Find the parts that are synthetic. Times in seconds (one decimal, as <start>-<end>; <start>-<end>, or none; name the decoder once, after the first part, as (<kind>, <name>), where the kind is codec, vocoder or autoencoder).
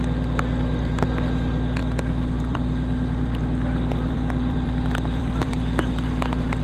1.8-5.5 (vocoder, BigVGAN v2)